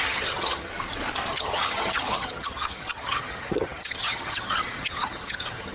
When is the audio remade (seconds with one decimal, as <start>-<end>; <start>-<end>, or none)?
0.0-0.7; 1.3-5.7